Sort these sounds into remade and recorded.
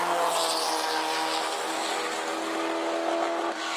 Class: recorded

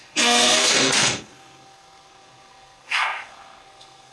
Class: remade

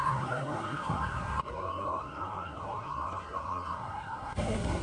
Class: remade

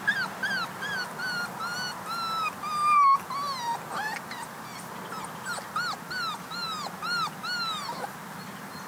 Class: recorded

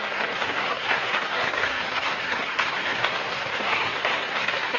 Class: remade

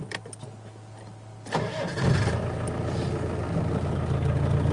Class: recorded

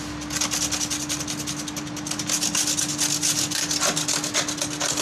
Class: recorded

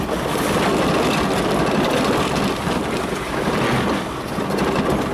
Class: recorded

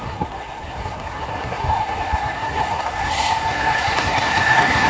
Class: remade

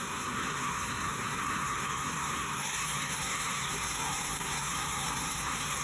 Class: remade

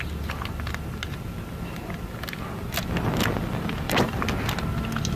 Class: recorded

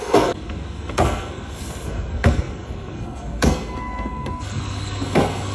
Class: remade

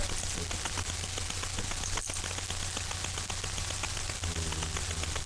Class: recorded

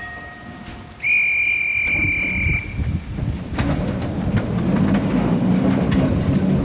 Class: recorded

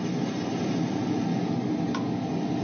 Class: recorded